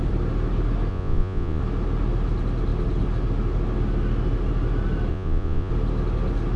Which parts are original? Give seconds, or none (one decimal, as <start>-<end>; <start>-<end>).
0.0-0.9; 1.6-5.1; 5.7-6.6

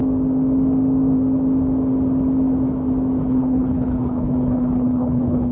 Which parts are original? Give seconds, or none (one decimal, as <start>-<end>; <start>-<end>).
0.0-3.3